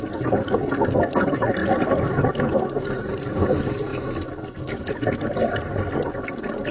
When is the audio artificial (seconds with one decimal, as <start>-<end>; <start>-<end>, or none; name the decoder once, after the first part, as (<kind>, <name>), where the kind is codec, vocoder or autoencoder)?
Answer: none